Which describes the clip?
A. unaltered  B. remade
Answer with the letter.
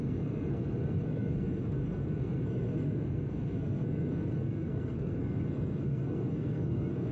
B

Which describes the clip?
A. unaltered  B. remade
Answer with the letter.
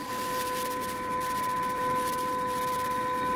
A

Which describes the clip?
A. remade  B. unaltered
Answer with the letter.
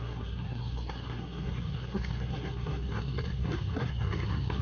A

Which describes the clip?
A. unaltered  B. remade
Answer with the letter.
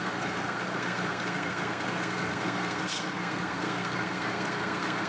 B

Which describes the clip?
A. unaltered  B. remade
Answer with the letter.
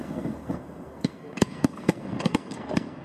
B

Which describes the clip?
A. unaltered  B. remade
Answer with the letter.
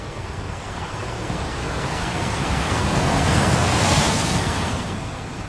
B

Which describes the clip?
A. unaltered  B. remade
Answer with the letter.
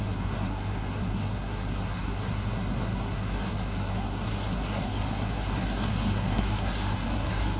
B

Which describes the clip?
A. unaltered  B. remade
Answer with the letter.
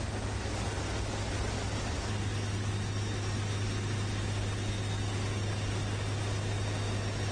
A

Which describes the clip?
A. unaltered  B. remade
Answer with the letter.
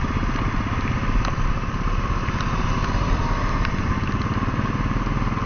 A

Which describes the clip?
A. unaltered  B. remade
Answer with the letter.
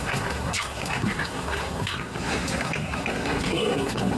B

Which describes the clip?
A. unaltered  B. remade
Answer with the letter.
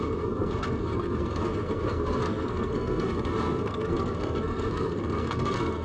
B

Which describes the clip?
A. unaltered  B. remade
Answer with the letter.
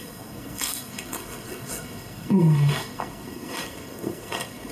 B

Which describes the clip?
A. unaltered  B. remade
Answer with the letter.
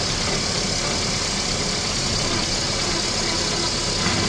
A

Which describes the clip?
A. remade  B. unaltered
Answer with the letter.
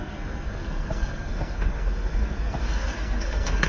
A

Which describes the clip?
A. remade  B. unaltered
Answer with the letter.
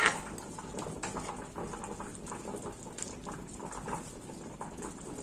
B